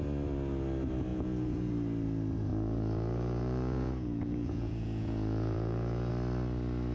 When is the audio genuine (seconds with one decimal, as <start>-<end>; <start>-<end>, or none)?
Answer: 0.0-1.1; 1.7-2.5; 6.1-6.9